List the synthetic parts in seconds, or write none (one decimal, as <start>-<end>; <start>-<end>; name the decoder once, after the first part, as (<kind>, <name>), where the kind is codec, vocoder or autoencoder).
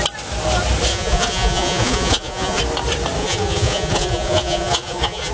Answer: 0.9-2.6 (vocoder, Vocos); 3.2-5.3